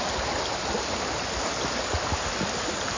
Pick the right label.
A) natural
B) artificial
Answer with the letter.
A